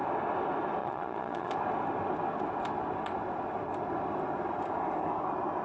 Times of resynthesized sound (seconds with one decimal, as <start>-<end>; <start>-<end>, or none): 0.8-1.5